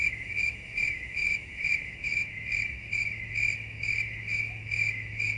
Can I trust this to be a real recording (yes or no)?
no